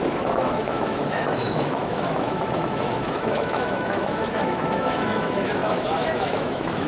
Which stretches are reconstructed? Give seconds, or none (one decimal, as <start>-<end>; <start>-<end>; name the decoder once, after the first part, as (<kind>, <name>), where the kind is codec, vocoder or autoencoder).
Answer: 0.0-6.9 (autoencoder, DAC-VAE)